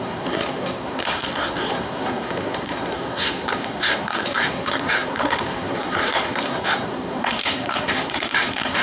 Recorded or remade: remade